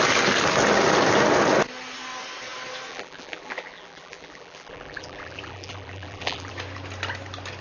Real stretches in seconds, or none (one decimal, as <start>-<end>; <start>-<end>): 0.0-2.9; 6.5-7.6